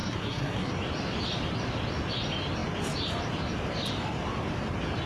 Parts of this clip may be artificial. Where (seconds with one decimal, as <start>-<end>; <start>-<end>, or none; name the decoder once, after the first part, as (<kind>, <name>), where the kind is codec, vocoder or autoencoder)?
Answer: 0.0-0.7 (codec, SNAC)